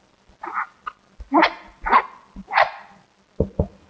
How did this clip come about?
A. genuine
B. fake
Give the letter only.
A